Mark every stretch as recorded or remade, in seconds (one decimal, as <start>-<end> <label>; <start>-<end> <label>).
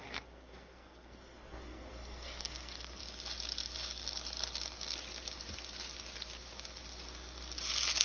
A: 0.0-3.0 remade; 3.0-8.0 recorded